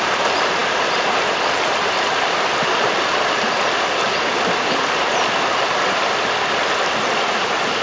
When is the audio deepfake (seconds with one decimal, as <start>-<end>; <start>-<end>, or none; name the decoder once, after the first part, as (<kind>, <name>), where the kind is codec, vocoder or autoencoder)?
none